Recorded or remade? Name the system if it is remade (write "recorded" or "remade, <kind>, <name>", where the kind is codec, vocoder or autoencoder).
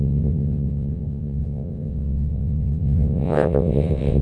remade, vocoder, WaveNeXt